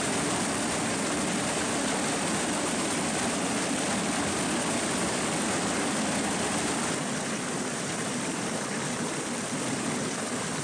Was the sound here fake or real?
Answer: real